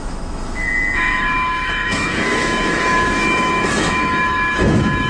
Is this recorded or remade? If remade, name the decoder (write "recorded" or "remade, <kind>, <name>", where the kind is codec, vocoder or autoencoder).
remade, autoencoder, DAC-VAE